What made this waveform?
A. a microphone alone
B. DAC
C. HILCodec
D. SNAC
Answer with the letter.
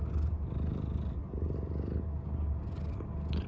A